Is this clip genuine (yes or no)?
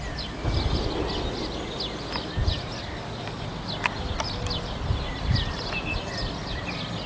yes